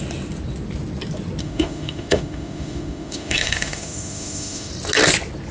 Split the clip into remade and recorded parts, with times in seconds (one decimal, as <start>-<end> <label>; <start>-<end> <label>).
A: 0.0-1.4 recorded; 1.4-4.7 remade; 4.7-5.5 recorded